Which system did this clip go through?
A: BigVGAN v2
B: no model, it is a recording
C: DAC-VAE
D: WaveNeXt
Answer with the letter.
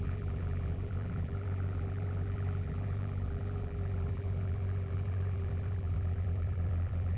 A